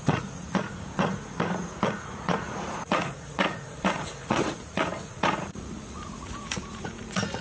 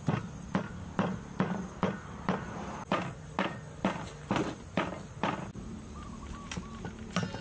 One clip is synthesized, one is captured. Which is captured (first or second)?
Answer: second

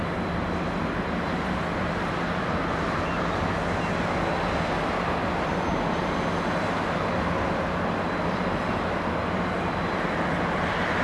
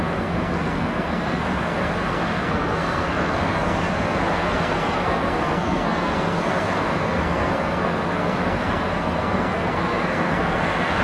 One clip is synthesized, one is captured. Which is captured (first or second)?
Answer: first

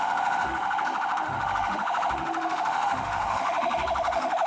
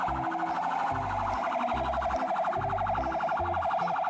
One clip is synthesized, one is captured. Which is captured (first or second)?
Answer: second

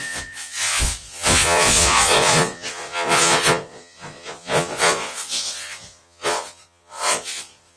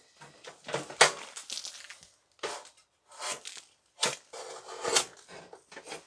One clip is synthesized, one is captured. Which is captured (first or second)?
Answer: second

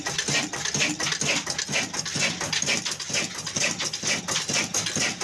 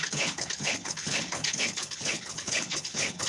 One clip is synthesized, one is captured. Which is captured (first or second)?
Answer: first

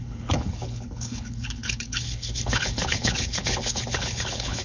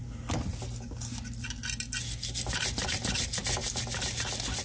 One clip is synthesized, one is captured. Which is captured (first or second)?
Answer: second